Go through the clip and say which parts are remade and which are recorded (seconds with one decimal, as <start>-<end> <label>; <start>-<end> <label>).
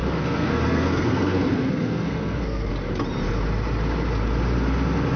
0.0-2.7 remade; 2.7-5.2 recorded